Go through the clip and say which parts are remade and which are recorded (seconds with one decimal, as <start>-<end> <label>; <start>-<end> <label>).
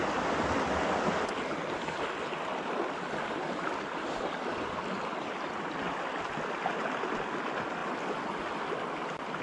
0.0-9.4 recorded